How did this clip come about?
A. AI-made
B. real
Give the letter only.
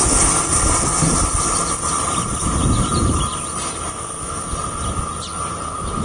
B